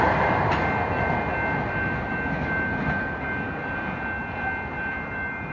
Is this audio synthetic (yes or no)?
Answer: no